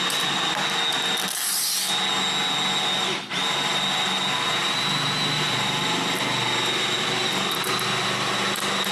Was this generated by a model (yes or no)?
no